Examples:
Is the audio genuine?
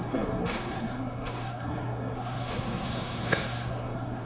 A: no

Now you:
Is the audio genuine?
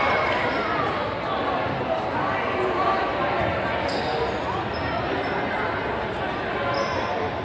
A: yes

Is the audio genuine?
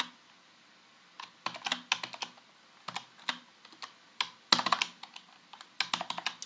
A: yes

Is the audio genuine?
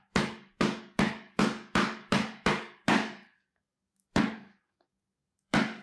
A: no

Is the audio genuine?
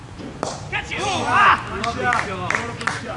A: no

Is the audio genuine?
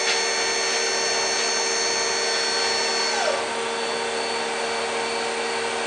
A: yes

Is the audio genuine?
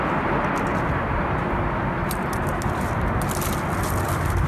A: yes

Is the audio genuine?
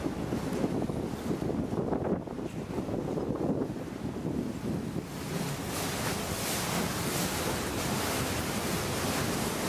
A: yes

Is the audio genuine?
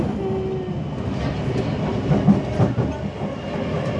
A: yes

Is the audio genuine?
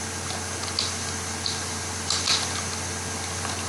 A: yes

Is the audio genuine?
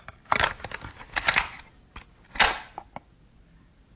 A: yes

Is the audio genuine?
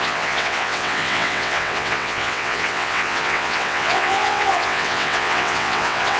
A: no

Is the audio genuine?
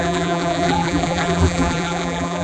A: no